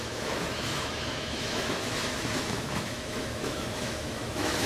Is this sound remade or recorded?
remade